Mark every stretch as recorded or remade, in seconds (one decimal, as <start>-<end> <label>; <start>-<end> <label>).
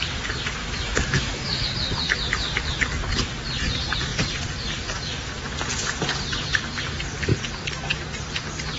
0.0-0.6 recorded; 0.6-1.6 remade; 1.6-8.8 recorded